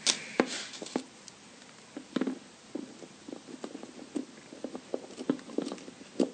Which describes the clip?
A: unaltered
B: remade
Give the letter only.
A